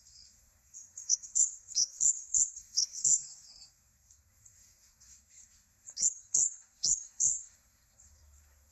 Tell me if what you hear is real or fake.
fake